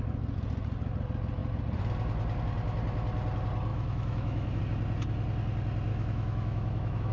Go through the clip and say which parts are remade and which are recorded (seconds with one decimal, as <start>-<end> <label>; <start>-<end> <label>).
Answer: 0.0-3.7 recorded; 3.7-4.6 remade; 4.6-5.9 recorded; 5.9-7.1 remade